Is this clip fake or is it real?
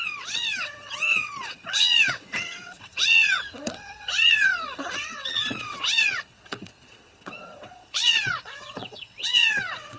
fake